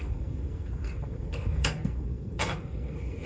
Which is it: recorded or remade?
remade